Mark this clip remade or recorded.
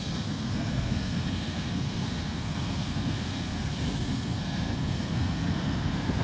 remade